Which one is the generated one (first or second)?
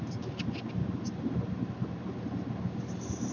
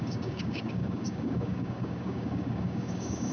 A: second